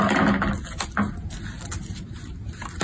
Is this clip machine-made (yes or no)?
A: no